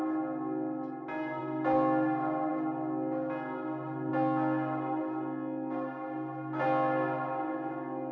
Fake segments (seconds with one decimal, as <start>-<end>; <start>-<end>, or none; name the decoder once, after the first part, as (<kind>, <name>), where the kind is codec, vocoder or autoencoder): none